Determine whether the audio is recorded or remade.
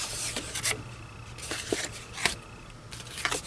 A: recorded